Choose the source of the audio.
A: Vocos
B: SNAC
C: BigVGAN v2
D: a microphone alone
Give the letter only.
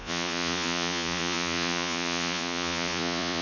A